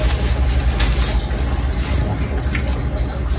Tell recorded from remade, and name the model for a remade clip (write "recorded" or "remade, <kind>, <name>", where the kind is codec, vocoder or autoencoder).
recorded